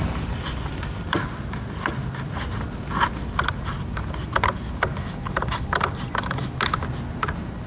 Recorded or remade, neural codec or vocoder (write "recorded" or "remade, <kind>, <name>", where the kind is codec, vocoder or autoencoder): recorded